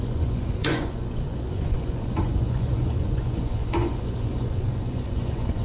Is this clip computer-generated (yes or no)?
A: yes